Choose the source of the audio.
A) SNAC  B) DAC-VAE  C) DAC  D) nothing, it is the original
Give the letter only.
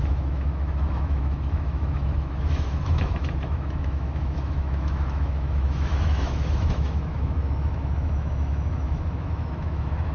B